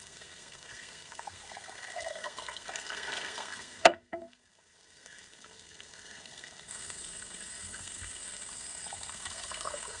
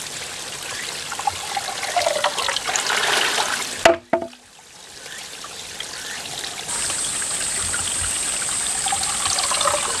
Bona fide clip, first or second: second